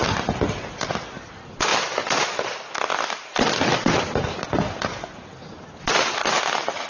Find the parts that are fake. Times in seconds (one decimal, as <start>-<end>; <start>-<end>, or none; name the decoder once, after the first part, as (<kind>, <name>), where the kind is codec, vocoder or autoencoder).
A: none